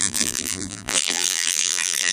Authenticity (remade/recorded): remade